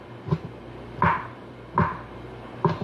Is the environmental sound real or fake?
real